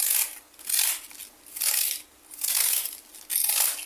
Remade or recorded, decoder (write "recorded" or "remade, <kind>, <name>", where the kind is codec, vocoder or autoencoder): recorded